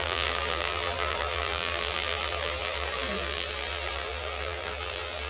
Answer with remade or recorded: remade